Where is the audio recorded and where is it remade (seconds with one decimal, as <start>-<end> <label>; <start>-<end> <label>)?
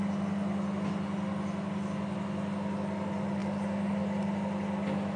0.0-5.2 recorded